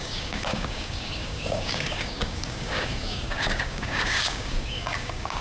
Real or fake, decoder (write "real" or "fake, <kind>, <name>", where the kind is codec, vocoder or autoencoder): fake, codec, DAC